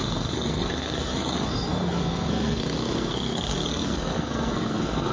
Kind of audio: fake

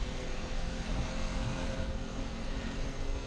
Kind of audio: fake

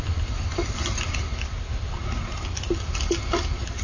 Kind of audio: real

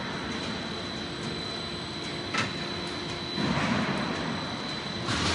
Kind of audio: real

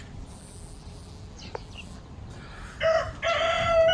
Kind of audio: real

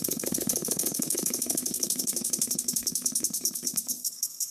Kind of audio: fake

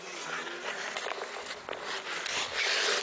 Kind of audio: real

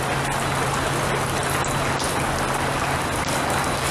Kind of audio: real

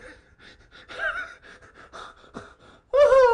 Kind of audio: real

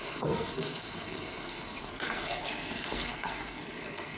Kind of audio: fake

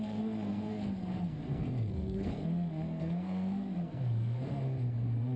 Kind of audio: fake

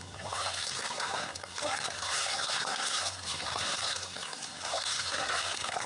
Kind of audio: fake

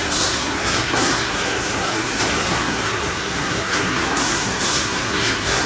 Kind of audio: fake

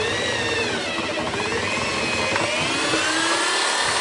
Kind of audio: real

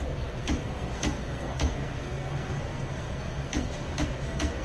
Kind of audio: fake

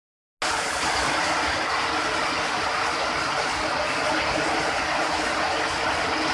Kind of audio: real